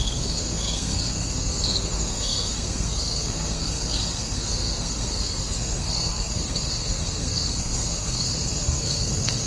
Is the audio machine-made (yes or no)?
yes